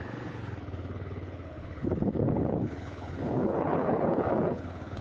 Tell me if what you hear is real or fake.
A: fake